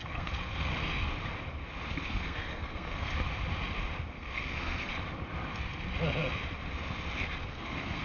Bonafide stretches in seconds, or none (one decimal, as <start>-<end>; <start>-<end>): 0.7-2.1; 3.1-4.1; 4.9-7.5